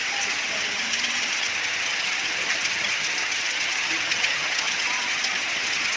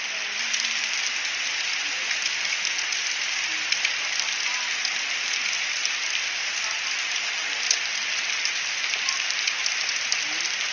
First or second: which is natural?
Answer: second